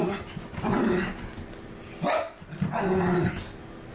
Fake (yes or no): no